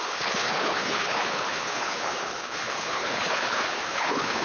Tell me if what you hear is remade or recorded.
remade